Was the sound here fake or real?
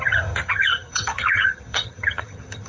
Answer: fake